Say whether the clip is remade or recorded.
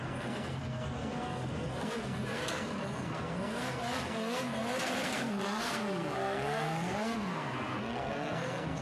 remade